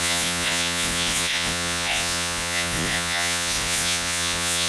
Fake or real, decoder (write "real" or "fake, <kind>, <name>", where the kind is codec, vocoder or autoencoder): fake, vocoder, Vocos